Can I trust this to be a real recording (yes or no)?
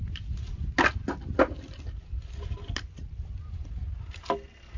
yes